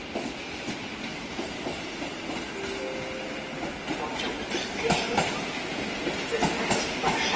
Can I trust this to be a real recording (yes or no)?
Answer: no